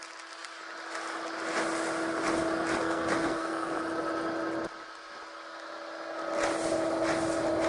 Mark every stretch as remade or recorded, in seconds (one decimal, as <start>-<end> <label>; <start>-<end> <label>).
0.0-2.8 recorded; 2.8-3.8 remade; 3.8-7.7 recorded